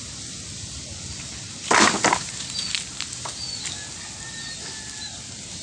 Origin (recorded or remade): recorded